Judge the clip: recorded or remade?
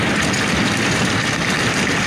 recorded